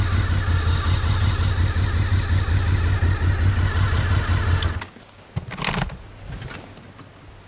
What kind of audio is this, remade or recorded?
recorded